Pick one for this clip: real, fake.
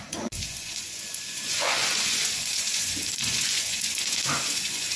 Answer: fake